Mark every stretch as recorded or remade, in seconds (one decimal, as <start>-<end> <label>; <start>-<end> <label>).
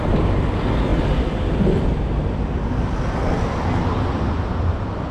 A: 0.0-5.1 recorded